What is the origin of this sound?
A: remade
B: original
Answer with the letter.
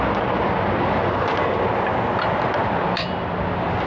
B